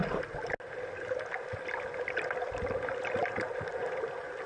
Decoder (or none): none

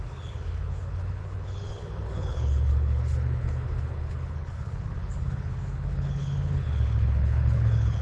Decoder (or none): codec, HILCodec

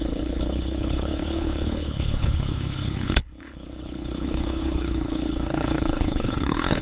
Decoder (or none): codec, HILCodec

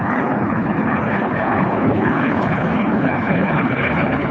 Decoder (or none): codec, HILCodec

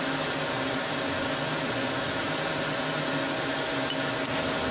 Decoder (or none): none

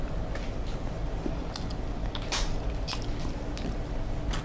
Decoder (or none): none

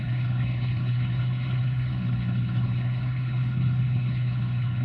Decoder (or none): codec, HILCodec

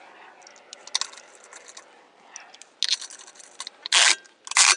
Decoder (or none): none